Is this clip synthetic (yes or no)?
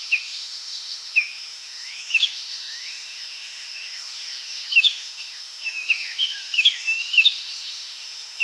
yes